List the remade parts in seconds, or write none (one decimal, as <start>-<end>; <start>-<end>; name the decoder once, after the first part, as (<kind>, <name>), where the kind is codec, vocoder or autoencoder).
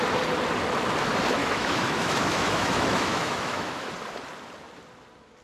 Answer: 1.4-3.9 (autoencoder, DAC-VAE)